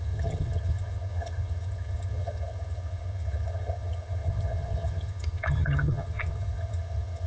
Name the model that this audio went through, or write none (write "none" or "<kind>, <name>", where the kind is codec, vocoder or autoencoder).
vocoder, HiFi-GAN